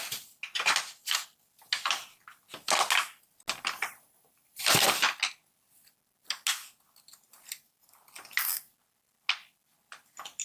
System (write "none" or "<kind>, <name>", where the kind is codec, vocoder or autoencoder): none